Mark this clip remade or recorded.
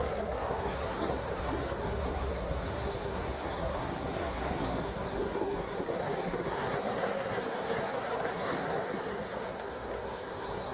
remade